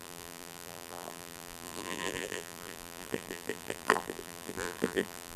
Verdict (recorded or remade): remade